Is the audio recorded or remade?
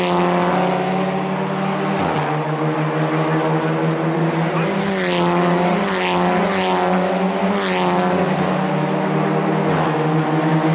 recorded